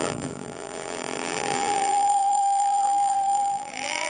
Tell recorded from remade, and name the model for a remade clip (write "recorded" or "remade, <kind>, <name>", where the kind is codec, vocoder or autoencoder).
remade, vocoder, BigVGAN v2